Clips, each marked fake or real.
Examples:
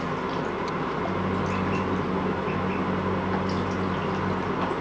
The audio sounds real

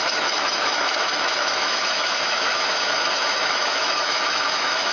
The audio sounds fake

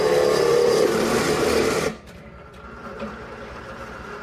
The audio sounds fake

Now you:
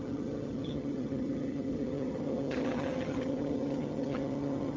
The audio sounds fake